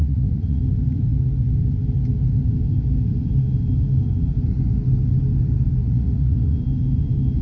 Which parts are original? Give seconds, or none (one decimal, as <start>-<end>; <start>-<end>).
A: 0.6-5.8; 6.6-7.4